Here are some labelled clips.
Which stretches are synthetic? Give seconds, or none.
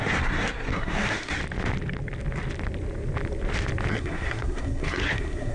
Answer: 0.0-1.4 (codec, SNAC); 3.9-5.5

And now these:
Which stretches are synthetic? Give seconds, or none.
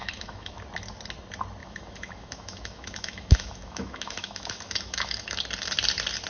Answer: 0.0-0.6 (autoencoder, DAC-VAE); 1.6-5.4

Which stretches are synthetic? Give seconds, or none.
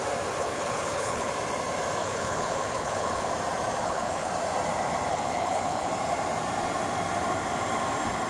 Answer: 0.4-1.3 (codec, HILCodec); 2.0-3.3; 3.8-4.3; 5.1-5.9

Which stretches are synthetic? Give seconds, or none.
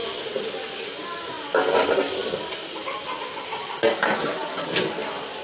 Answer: 1.8-5.4 (vocoder, BigVGAN v2)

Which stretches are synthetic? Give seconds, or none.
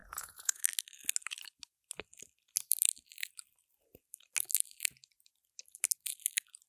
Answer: 0.0-0.6 (vocoder, Vocos)